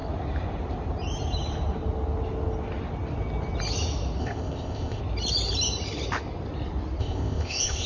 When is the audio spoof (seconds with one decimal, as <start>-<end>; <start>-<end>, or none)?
4.2-5.0; 7.0-7.9